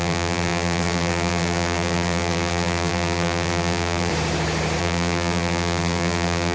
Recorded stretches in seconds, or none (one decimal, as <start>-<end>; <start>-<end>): 4.1-4.8